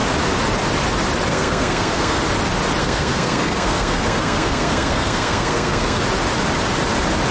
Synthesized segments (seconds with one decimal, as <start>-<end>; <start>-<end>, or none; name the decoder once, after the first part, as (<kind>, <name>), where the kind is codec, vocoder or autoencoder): 1.3-2.2 (codec, SNAC); 2.8-6.0